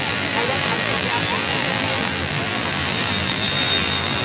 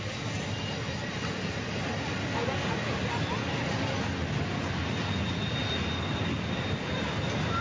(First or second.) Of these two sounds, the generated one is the first